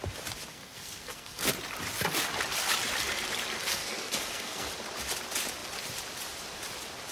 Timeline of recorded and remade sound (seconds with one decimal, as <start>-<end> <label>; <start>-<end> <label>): 0.0-0.5 recorded; 0.5-1.5 remade; 1.5-3.6 recorded; 3.6-4.7 remade; 4.7-7.1 recorded